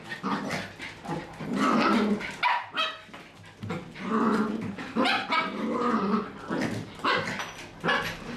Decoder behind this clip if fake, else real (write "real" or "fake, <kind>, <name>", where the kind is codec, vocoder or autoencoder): real